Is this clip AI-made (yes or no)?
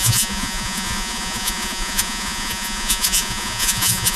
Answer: yes